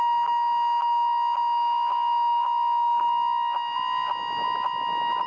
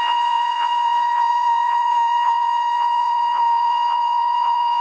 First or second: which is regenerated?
second